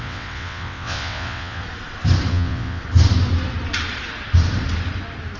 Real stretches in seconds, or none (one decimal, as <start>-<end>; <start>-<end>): 1.6-2.3; 2.8-5.4